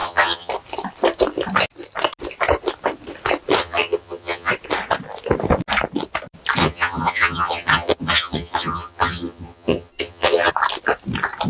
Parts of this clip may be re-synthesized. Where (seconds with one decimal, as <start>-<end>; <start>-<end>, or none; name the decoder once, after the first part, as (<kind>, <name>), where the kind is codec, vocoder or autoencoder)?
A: 0.0-0.5 (vocoder, HiFi-GAN); 3.6-4.5; 6.6-10.5